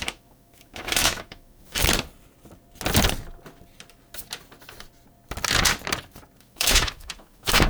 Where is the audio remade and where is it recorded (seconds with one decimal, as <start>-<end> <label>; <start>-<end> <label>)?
0.0-1.8 remade; 1.8-6.4 recorded; 6.4-7.7 remade